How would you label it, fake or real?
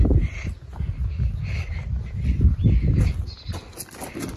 real